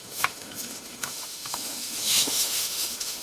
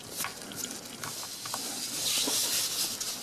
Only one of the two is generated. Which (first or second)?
first